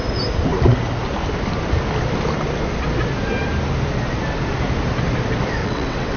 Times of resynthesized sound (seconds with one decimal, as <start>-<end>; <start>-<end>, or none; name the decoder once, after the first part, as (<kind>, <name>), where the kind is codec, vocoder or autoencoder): 5.6-6.2 (vocoder, WaveNeXt)